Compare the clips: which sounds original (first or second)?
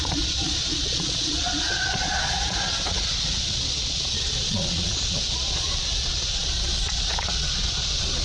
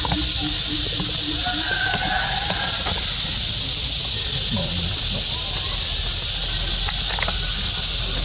second